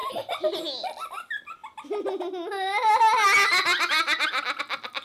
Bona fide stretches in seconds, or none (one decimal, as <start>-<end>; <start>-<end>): 0.0-5.0